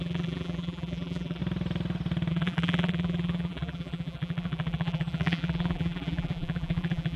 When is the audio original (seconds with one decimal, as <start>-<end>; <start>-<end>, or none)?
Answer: 1.4-2.3